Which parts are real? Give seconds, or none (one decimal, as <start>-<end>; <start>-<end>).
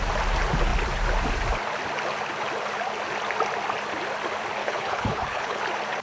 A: 0.0-4.6; 5.6-6.0